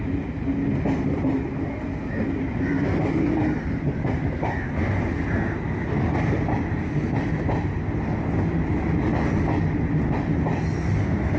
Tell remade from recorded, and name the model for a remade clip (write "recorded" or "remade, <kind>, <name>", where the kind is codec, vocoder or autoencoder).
recorded